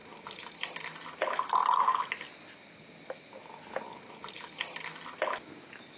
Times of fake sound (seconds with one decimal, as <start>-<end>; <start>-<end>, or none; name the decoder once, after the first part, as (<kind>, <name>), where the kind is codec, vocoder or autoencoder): 0.0-0.7 (vocoder, BigVGAN v2)